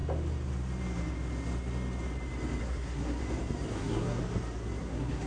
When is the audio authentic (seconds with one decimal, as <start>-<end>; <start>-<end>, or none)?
0.0-2.6; 3.2-3.7; 4.2-4.8